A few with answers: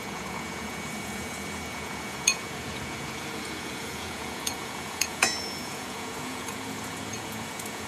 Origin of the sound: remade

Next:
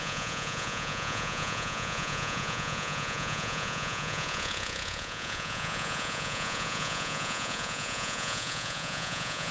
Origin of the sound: remade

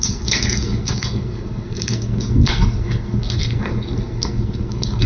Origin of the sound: remade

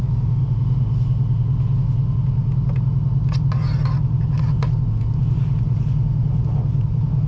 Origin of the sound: recorded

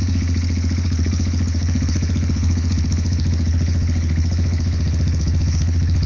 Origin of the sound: remade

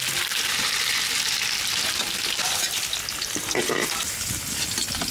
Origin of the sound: recorded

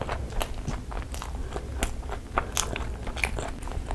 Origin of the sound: recorded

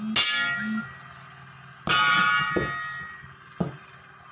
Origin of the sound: recorded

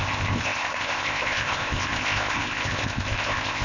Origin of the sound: remade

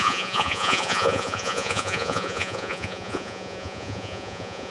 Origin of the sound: remade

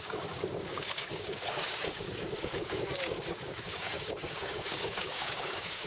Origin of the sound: remade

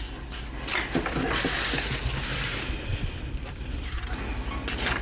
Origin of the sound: recorded